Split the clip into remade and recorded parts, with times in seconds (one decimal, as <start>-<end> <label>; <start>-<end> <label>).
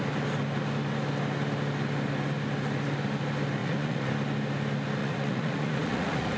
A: 0.0-3.6 recorded; 3.6-4.1 remade; 4.1-5.0 recorded; 5.0-6.4 remade